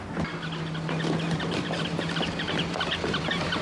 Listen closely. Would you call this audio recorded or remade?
recorded